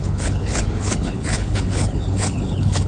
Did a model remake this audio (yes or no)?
yes